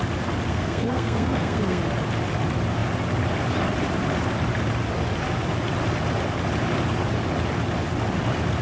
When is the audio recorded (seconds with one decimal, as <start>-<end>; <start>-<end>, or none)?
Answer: 0.0-0.5; 1.8-8.6